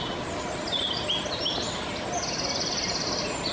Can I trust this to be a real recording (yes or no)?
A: yes